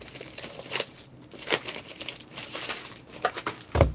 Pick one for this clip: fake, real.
fake